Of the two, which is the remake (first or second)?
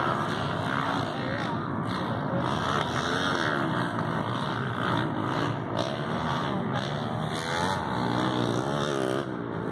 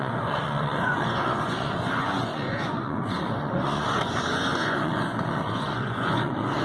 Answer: second